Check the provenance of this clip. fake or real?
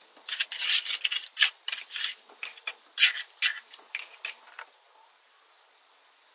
real